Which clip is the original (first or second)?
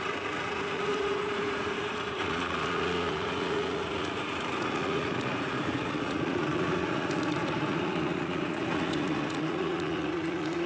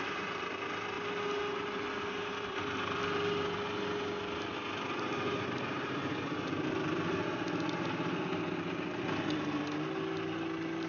second